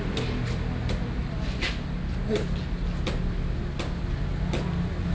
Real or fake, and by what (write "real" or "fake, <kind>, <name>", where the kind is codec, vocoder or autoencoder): real